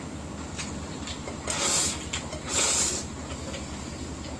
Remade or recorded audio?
recorded